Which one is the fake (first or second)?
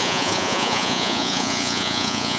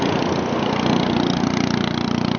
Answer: first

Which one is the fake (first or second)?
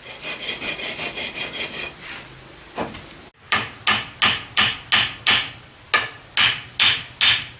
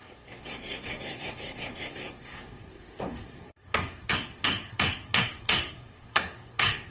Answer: second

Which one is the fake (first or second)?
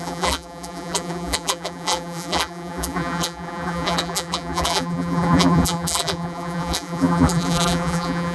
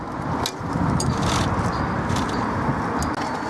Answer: first